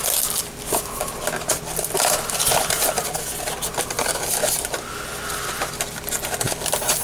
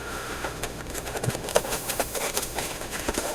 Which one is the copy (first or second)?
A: second